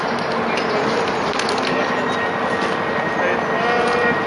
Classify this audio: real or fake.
real